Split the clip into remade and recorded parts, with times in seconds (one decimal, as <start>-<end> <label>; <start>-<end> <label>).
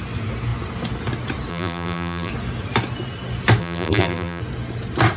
0.0-1.5 recorded; 1.5-2.3 remade; 2.3-3.6 recorded; 3.6-4.4 remade; 4.4-5.2 recorded